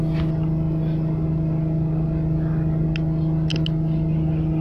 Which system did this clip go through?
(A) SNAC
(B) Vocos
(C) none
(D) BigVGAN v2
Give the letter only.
C